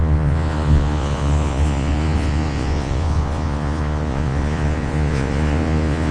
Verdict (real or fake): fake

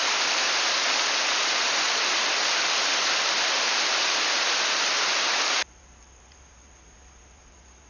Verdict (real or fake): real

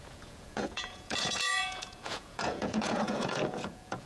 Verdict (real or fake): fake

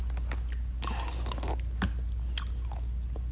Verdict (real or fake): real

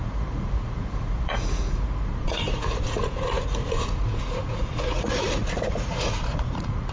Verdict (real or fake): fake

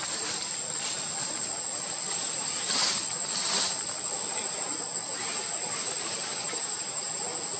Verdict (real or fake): real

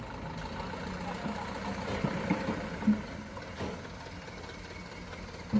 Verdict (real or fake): real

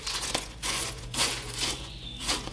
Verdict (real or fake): fake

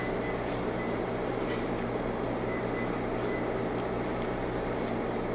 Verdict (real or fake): real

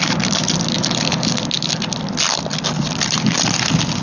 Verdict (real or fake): real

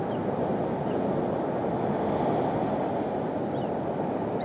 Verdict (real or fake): real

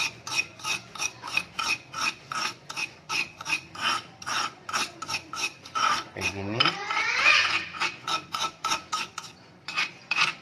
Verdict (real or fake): fake